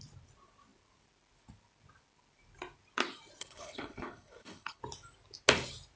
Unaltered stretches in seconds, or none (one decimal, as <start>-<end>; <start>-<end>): 0.0-3.4; 4.8-6.0